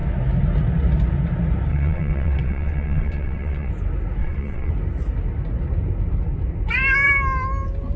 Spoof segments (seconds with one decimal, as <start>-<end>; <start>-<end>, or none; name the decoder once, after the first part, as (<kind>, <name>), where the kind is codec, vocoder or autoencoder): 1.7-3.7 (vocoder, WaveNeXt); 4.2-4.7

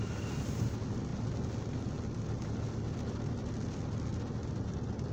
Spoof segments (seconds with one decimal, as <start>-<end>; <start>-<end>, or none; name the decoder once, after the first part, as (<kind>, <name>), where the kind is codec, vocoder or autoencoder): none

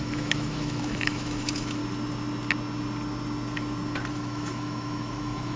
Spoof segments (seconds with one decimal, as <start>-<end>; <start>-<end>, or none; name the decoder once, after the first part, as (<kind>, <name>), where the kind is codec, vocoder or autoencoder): 0.0-1.8 (autoencoder, DAC-VAE); 4.1-5.6

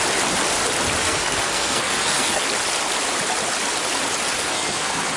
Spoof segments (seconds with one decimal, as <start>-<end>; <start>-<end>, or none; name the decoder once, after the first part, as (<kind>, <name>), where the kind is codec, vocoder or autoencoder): 1.0-2.4 (codec, SNAC); 4.5-5.2

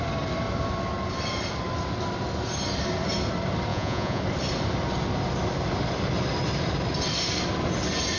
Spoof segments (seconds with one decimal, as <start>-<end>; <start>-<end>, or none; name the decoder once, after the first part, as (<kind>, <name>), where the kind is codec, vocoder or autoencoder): 3.7-4.2 (vocoder, Vocos)

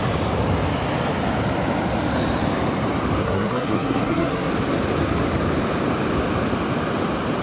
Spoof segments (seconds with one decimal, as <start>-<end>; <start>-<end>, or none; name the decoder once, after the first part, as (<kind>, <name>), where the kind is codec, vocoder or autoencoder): 3.2-4.5 (codec, SNAC)